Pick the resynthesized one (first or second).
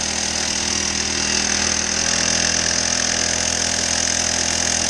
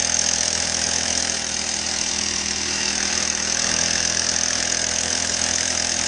second